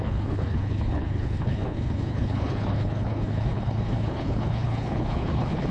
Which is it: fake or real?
fake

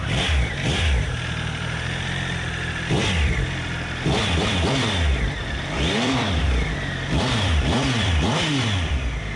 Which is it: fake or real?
fake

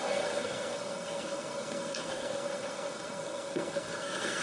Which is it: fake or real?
fake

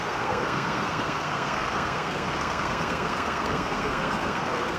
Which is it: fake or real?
fake